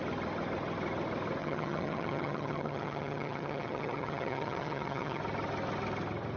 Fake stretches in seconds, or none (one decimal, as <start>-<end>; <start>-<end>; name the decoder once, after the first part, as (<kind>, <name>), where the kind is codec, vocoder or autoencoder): 1.4-5.2 (vocoder, HiFi-GAN)